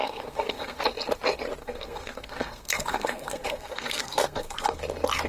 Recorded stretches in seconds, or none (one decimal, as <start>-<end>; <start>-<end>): 0.8-1.6; 4.8-5.3